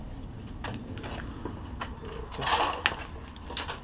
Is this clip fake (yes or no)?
no